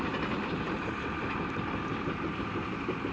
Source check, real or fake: real